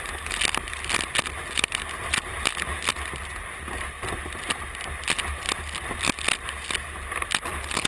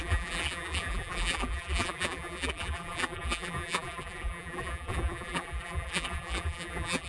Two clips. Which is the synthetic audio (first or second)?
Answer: second